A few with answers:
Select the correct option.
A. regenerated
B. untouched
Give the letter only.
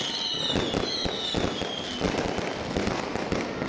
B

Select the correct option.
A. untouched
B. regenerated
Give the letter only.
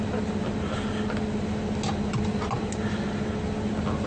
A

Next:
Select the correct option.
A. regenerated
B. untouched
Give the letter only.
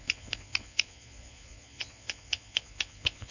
A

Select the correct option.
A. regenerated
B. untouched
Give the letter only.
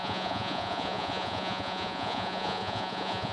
A